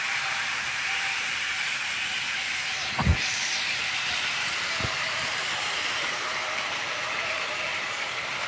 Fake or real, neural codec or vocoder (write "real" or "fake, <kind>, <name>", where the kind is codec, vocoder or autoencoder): fake, vocoder, BigVGAN v2